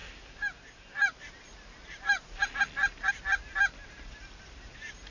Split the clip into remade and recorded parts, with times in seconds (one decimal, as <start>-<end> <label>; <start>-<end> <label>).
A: 0.0-3.8 recorded; 3.8-5.1 remade